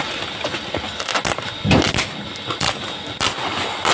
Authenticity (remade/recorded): recorded